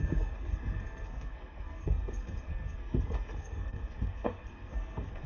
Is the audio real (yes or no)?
no